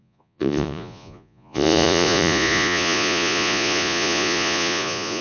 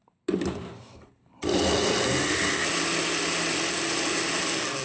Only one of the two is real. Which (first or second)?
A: second